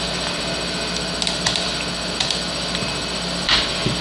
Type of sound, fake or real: real